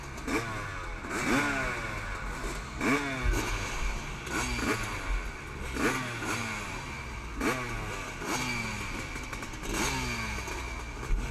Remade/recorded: recorded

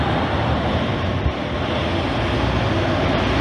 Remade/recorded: recorded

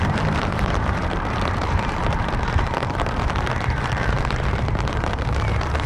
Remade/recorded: remade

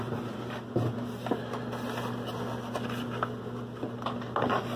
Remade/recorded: recorded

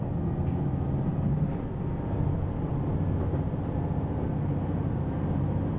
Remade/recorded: recorded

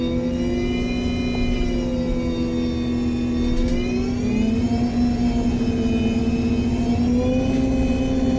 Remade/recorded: recorded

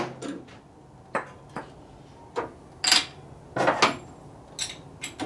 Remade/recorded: recorded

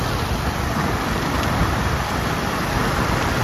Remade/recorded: remade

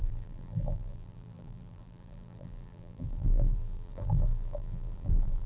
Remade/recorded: remade